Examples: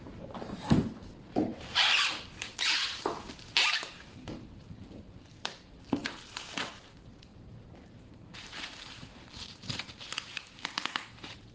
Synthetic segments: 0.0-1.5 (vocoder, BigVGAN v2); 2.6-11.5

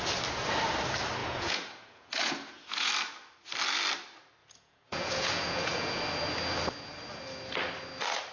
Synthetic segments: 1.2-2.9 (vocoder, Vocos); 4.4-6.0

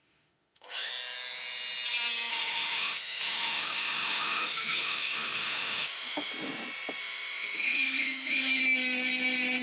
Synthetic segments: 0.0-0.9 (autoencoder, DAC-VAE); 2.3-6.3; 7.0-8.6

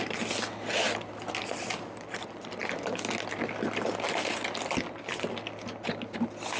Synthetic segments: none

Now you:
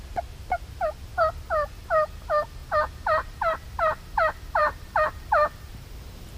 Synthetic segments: 4.6-5.9 (vocoder, BigVGAN v2)